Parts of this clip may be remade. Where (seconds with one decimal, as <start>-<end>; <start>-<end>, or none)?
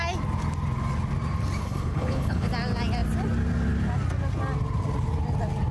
1.6-2.5